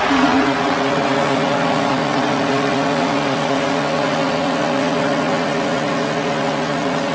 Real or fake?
fake